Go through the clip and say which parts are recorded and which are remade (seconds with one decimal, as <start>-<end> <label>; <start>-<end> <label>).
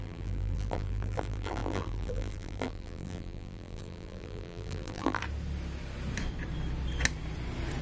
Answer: 0.0-5.2 remade; 5.2-7.8 recorded